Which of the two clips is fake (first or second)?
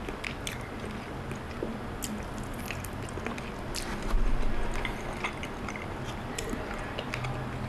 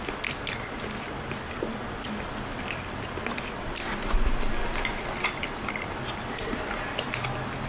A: second